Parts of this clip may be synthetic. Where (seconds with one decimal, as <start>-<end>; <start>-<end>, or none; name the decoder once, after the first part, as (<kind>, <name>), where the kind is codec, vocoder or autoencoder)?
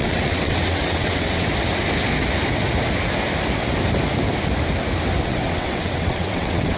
0.0-1.5 (vocoder, WaveNeXt); 5.2-6.8